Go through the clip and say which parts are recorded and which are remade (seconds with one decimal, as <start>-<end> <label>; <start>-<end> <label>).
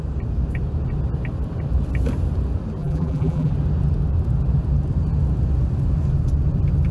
0.0-2.8 recorded; 2.8-3.5 remade; 3.5-6.9 recorded